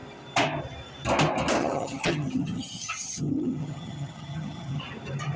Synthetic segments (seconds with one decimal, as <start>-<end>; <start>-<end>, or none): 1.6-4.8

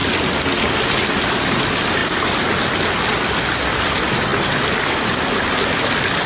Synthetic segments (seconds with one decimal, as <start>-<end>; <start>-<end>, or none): none

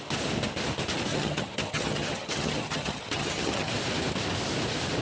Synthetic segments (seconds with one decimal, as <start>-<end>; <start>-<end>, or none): 1.1-3.7

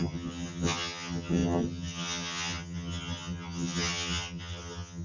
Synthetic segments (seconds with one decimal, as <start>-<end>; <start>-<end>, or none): 0.0-5.0